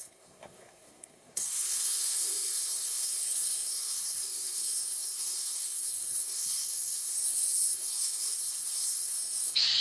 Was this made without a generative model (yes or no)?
no